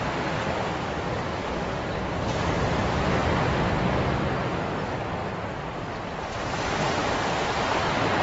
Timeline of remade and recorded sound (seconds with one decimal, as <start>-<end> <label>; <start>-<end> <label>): 0.0-8.2 recorded